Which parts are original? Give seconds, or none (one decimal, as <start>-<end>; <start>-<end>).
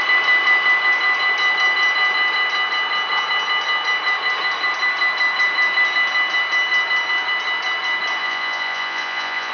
0.0-8.2